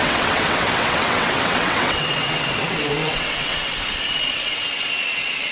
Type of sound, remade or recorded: remade